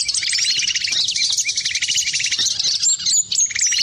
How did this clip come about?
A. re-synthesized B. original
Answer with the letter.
B